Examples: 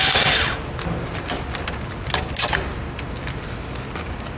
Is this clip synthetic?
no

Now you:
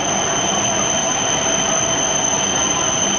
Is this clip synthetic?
no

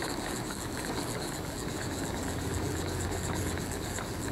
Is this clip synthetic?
yes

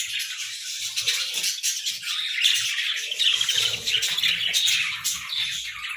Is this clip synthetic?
no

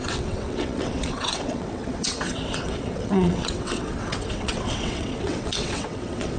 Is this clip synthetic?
yes